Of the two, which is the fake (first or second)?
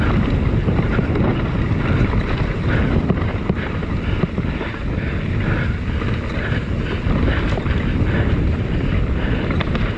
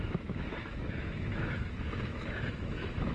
second